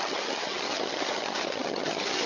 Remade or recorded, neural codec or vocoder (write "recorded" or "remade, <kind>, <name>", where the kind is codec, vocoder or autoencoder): remade, vocoder, HiFi-GAN